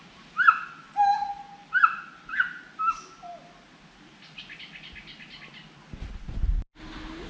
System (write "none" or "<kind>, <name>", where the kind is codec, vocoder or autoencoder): none